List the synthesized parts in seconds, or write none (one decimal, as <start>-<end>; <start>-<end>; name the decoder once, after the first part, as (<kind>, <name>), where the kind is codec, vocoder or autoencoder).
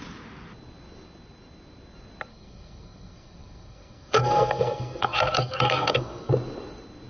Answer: 2.3-6.3 (codec, SNAC)